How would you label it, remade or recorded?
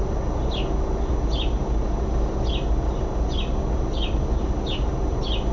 recorded